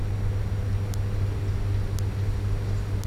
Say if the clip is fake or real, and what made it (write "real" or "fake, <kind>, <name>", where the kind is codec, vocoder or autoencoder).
real